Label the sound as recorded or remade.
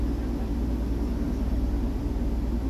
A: recorded